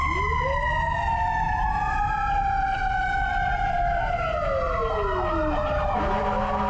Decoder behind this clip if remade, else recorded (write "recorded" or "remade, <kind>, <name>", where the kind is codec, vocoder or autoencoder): recorded